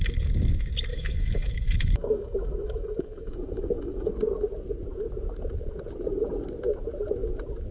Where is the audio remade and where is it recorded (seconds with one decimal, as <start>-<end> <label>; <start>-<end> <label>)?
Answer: 0.0-0.9 recorded; 0.9-4.1 remade; 4.1-7.7 recorded